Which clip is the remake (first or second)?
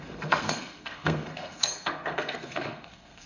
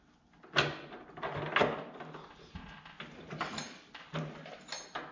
first